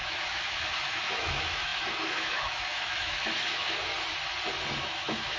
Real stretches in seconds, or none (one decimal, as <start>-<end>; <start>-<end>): 3.9-4.8